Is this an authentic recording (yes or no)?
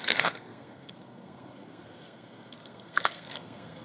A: no